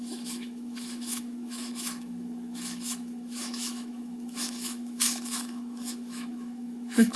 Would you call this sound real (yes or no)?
no